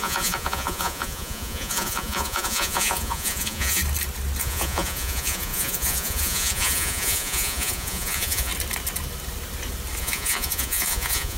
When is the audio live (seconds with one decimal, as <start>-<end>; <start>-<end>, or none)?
3.8-4.4; 8.5-10.0